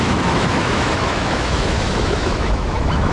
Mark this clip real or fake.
fake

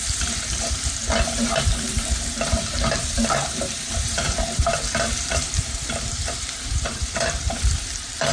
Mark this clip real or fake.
fake